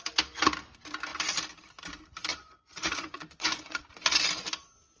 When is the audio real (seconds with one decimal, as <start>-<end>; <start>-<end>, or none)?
0.0-2.3; 3.8-5.0

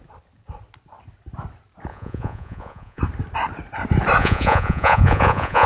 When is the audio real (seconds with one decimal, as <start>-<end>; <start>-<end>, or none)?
0.0-1.9; 3.0-4.2

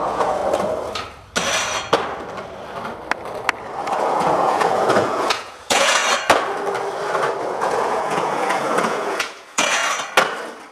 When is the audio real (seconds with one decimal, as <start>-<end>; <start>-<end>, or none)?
0.4-3.9; 6.0-7.4; 9.8-10.7

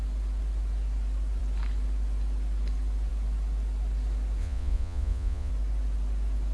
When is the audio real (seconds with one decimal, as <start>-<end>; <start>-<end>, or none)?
0.0-4.4; 5.5-6.5